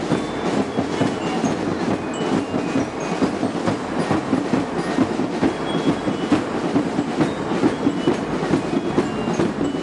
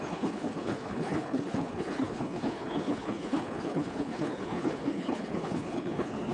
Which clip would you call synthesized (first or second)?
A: second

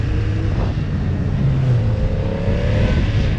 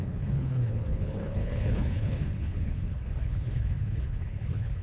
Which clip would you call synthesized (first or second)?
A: second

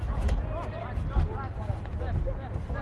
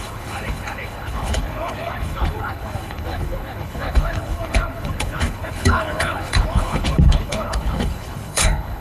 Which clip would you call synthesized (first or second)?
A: second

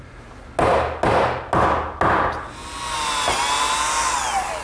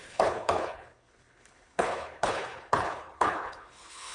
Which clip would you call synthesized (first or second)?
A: second